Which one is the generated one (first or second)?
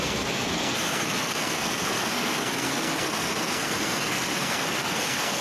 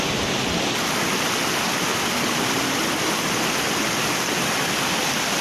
first